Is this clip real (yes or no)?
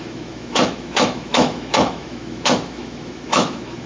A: no